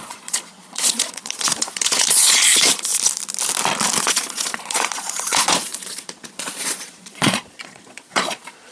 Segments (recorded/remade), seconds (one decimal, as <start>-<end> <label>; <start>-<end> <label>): 0.0-2.9 remade; 2.9-4.0 recorded; 4.0-8.7 remade